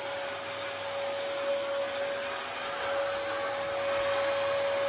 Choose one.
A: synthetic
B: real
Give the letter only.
B